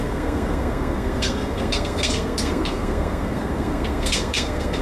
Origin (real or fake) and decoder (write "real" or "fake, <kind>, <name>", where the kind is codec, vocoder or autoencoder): fake, codec, SNAC